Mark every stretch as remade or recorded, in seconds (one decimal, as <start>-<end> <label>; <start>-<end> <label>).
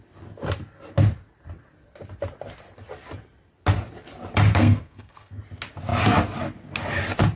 0.0-4.6 recorded; 4.6-5.4 remade; 5.4-7.4 recorded